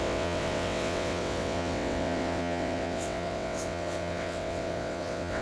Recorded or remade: remade